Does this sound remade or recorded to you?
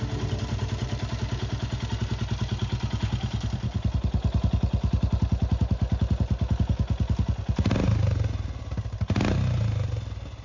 recorded